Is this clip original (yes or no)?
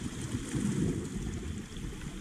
yes